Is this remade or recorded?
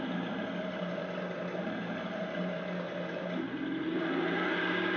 recorded